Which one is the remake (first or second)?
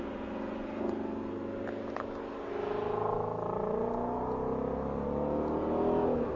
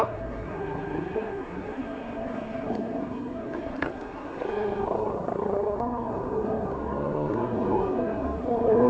second